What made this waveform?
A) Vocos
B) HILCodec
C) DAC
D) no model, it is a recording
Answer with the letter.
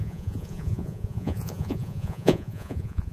A